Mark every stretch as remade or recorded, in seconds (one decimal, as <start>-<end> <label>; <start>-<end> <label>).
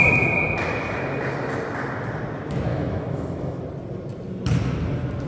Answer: 0.0-2.7 recorded; 2.7-3.6 remade; 3.6-5.3 recorded